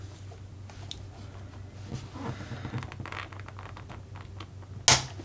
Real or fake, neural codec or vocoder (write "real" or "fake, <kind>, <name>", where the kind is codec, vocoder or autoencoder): real